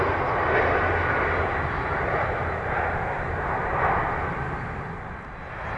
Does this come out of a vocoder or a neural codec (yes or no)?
no